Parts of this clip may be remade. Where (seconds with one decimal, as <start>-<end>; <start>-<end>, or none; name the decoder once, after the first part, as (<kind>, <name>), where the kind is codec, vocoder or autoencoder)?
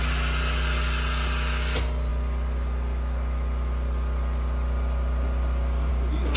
none